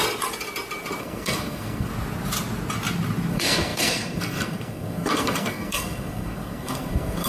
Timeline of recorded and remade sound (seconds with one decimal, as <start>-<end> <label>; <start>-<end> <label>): 0.0-1.0 recorded; 1.0-1.9 remade; 1.9-3.3 recorded; 3.3-7.3 remade